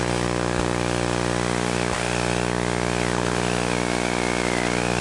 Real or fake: real